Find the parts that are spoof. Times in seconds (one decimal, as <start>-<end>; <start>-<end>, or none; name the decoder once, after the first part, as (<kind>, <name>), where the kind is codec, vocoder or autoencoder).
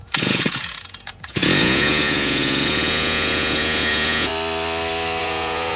0.0-4.3 (vocoder, Vocos); 5.2-5.8